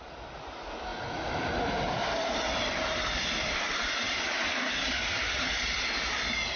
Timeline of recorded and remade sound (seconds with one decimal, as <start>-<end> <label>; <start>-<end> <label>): 0.0-2.9 recorded; 2.9-6.1 remade; 6.1-6.6 recorded